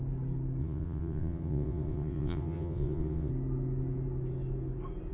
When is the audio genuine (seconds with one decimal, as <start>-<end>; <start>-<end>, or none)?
0.0-0.6; 3.3-5.1